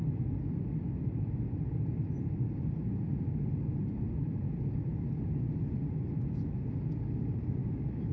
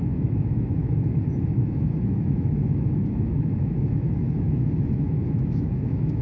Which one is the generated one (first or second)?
second